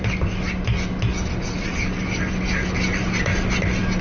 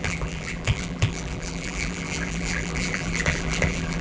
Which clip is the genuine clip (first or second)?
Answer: first